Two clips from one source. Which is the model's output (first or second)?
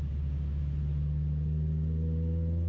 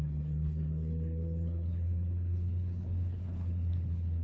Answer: second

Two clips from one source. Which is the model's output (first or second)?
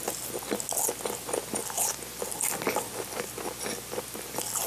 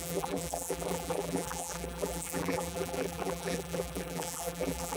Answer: second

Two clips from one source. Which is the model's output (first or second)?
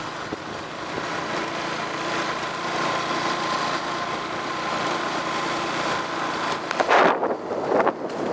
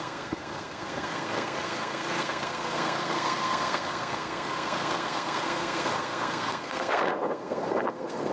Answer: second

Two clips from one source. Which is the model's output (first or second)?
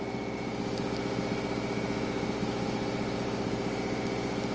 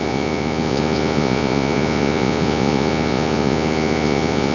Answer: second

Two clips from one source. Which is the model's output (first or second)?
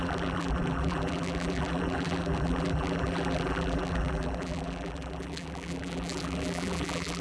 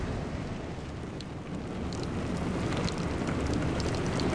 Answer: first